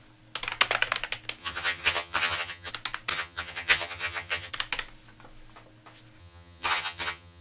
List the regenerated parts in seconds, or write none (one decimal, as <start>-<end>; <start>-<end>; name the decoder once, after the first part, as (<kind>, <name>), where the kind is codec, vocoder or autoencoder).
1.4-2.7 (vocoder, HiFi-GAN); 3.1-4.5; 6.2-7.4